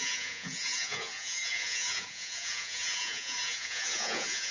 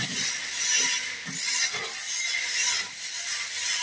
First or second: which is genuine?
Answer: second